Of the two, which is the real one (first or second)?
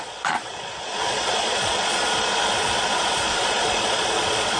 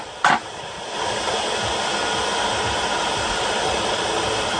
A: second